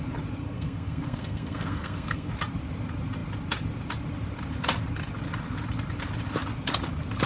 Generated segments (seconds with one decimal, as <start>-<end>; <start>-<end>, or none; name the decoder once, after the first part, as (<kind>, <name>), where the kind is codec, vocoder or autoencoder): 0.4-2.3 (codec, SNAC)